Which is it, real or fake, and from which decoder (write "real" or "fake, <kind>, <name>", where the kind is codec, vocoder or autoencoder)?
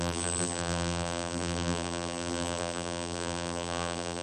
fake, vocoder, BigVGAN v2